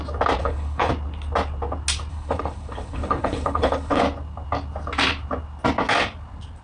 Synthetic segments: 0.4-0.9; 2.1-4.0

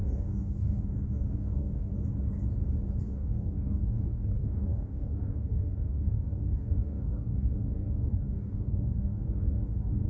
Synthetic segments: 0.0-1.9; 3.0-10.1

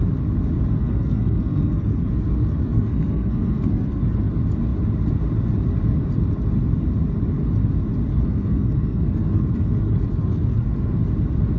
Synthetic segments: 0.8-4.3; 8.1-11.0

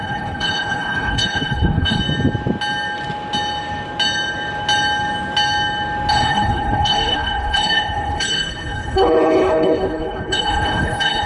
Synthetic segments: 0.0-2.0; 6.1-11.3

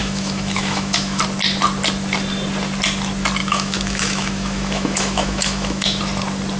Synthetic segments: 0.0-1.2; 3.4-6.0

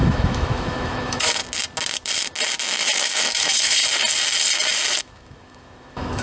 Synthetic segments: 0.0-1.4; 2.6-3.8; 5.0-6.2

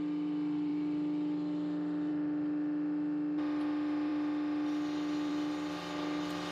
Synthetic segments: none

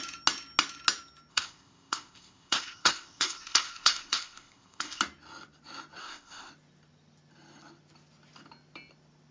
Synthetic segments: 1.3-5.0; 6.0-6.5